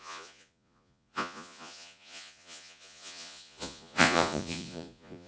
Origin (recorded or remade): remade